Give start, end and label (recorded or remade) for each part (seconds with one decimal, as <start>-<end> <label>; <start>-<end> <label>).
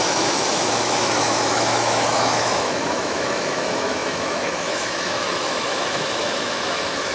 0.0-7.1 remade